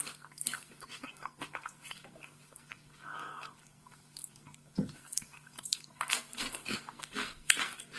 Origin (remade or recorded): remade